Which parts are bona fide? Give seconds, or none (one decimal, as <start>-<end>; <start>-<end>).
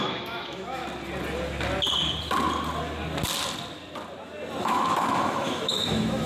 0.8-4.6